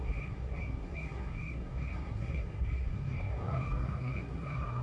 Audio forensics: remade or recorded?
remade